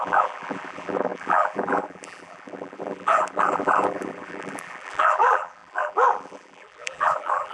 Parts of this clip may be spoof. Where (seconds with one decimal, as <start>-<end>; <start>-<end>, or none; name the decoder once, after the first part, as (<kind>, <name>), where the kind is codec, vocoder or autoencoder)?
0.0-7.5 (vocoder, BigVGAN v2)